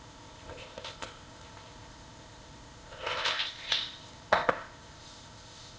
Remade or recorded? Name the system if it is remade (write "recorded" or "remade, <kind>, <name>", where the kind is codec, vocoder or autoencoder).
remade, codec, ZipCodec